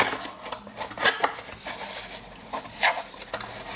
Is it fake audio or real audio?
real